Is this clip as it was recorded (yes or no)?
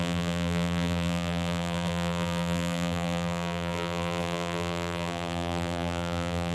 no